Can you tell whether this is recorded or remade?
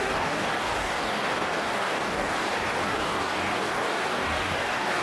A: remade